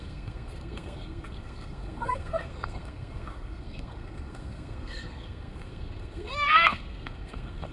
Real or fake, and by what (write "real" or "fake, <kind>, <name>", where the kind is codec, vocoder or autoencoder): fake, codec, SNAC